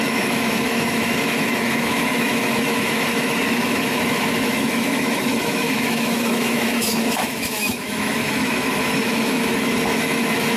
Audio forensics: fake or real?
fake